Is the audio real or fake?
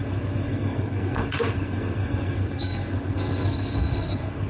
fake